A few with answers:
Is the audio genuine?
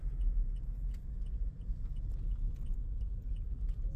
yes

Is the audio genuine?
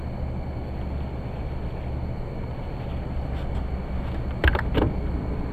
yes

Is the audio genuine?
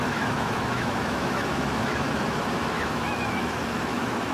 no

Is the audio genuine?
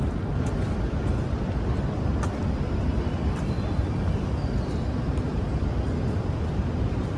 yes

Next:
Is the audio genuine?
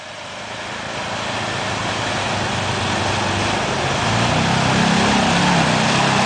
yes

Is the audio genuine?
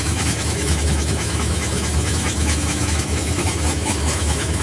no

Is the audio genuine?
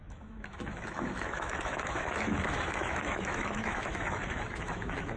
no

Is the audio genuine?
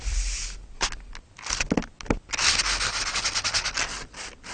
yes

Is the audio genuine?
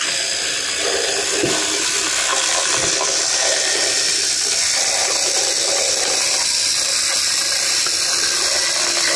yes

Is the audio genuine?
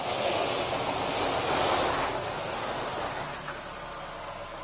yes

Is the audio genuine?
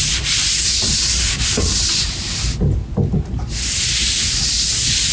yes